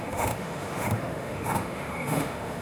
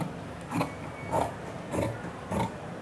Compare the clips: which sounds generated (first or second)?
first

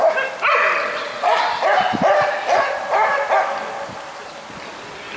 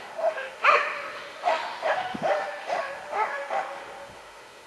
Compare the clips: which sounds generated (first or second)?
second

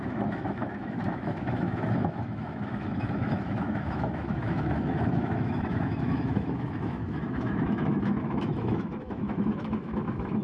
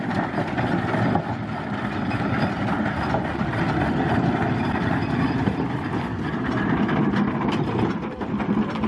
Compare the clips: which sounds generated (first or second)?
first